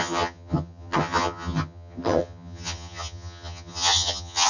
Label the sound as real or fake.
fake